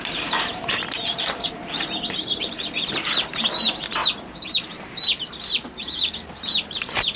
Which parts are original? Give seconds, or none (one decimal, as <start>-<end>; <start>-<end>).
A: none